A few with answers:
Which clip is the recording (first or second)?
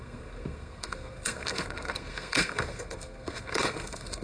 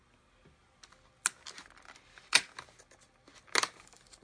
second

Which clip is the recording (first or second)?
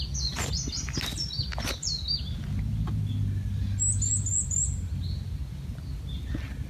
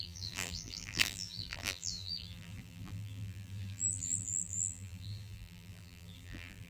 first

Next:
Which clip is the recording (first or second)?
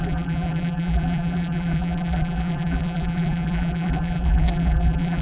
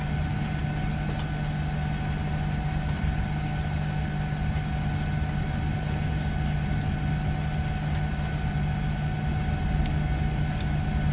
second